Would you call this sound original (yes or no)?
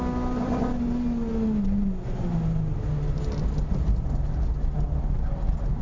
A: yes